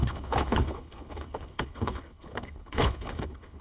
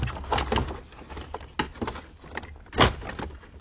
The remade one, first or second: first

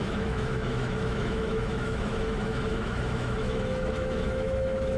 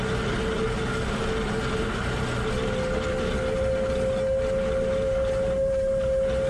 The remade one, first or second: first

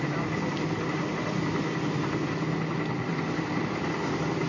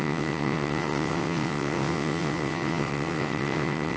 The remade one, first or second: second